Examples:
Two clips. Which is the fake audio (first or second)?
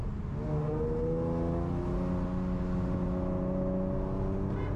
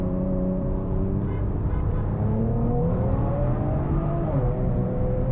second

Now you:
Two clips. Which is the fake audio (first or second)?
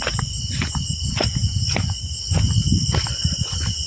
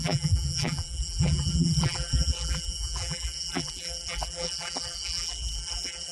second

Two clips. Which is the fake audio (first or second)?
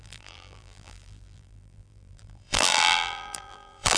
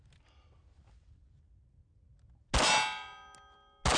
first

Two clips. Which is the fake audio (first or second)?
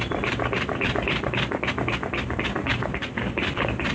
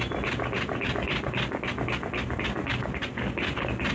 first